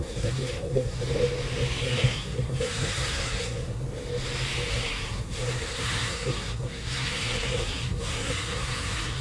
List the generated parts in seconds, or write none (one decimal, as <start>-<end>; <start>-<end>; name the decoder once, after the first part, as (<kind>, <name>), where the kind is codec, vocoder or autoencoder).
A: 0.0-1.0 (codec, SNAC); 1.8-3.8; 4.7-9.2